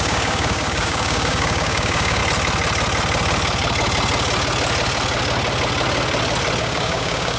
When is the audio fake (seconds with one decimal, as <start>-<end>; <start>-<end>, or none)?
0.0-2.2; 6.6-7.4

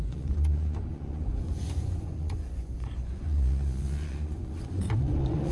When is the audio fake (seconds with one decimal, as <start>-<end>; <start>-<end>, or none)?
0.0-5.5